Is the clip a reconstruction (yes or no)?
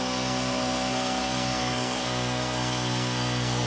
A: yes